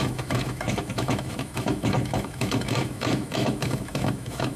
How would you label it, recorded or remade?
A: remade